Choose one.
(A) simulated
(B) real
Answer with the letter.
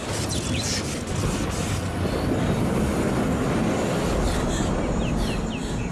B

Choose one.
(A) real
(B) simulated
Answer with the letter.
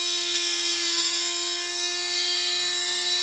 B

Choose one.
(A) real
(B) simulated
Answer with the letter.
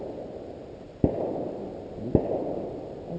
A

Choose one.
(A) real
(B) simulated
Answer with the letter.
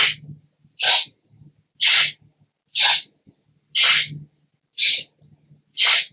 A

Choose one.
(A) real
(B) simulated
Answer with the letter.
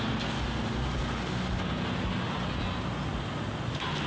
A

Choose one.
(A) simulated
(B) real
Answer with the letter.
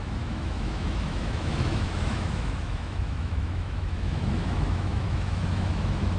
A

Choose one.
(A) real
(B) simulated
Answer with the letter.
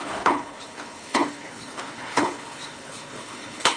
B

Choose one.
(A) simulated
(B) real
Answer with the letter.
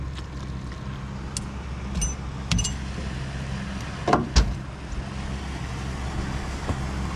B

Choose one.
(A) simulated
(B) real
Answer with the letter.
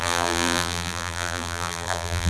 A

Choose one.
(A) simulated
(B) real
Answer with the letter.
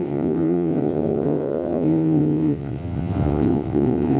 A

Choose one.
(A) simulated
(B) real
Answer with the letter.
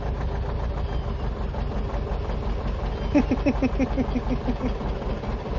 B